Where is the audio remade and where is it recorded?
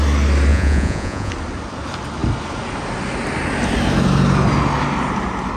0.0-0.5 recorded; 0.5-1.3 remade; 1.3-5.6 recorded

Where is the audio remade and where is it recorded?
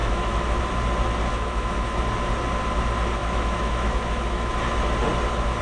0.0-0.6 remade; 0.6-1.2 recorded; 1.2-2.0 remade; 2.0-3.2 recorded; 3.2-4.6 remade; 4.6-5.6 recorded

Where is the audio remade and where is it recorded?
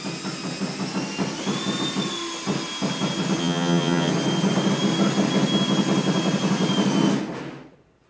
0.0-3.4 recorded; 3.4-4.1 remade; 4.1-8.1 recorded